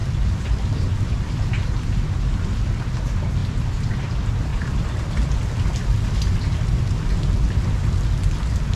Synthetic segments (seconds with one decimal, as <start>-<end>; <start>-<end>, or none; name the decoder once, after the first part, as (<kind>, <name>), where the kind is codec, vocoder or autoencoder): 3.4-4.1 (vocoder, BigVGAN v2); 4.5-6.8